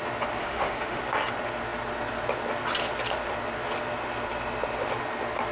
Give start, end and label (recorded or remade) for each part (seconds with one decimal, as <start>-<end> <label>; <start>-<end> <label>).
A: 0.0-0.4 recorded; 0.4-1.0 remade; 1.0-5.5 recorded